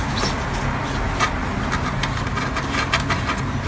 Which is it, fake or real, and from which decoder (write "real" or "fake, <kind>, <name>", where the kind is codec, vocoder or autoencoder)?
real